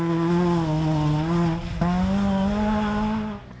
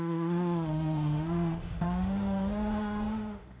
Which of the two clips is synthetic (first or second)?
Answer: second